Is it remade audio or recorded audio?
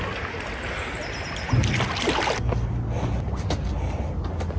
recorded